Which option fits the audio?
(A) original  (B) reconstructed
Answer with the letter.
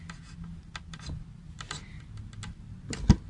A